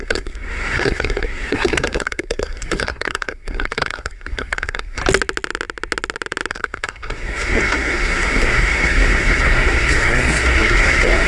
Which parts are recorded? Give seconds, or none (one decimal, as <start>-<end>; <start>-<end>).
5.0-6.5